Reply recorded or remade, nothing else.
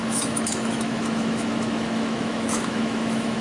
remade